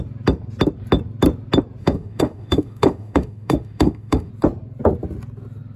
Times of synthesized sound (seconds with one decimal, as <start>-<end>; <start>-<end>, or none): 1.8-4.3